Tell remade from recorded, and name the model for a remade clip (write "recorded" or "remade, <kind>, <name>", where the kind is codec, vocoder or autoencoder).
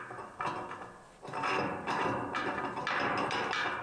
recorded